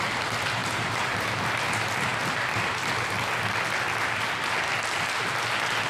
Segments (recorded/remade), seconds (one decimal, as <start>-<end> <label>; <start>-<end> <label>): 0.0-0.6 recorded; 0.6-1.4 remade; 1.4-5.9 recorded